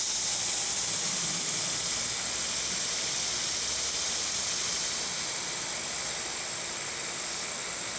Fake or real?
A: real